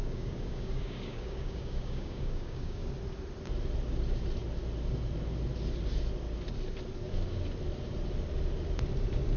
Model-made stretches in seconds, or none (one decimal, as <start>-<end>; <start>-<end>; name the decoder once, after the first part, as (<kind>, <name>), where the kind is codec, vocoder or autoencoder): 0.0-2.9 (codec, DAC)